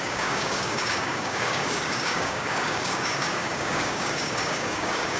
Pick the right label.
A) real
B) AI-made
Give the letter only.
B